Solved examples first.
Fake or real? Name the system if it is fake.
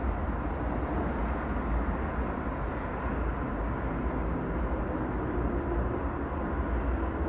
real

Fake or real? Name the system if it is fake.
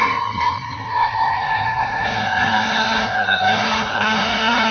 fake, codec, SNAC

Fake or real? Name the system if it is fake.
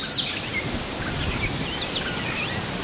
real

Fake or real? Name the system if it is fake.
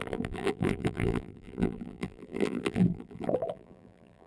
fake, vocoder, BigVGAN v2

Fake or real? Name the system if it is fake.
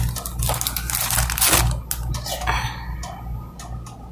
real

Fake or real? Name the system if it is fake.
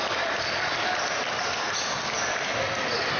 real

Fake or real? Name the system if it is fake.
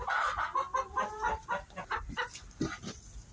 real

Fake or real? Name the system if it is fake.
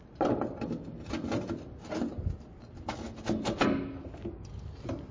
real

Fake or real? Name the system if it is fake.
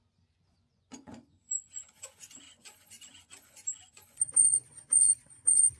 fake, vocoder, Vocos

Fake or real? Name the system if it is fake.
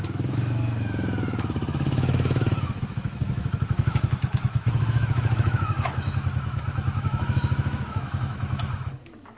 fake, autoencoder, DAC-VAE